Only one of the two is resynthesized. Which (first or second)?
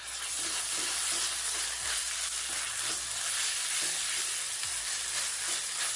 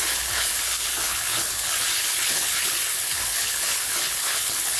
second